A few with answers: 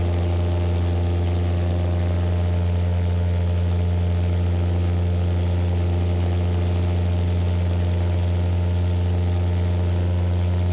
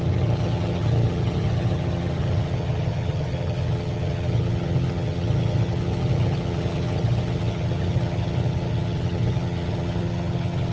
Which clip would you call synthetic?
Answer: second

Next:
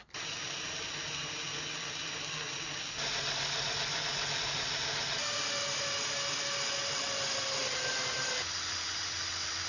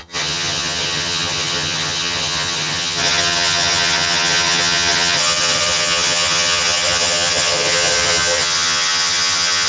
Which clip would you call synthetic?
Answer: second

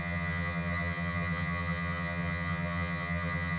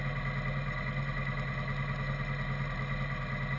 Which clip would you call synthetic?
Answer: first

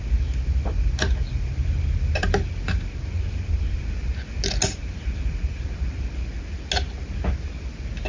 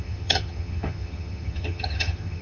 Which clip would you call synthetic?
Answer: second